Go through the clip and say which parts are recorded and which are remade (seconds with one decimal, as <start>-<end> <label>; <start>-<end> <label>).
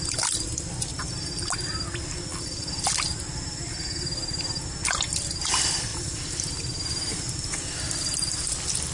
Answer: 0.0-8.9 recorded